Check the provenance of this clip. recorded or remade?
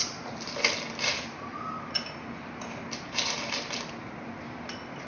recorded